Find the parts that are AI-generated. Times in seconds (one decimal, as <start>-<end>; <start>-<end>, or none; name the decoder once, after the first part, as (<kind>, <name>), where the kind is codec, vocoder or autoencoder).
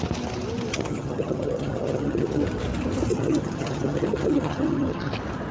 0.7-2.4 (vocoder, HiFi-GAN); 3.1-5.1